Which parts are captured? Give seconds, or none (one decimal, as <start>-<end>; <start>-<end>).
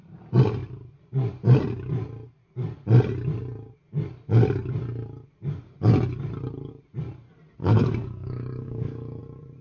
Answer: 0.0-7.6; 9.2-9.6